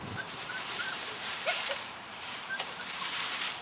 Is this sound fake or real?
fake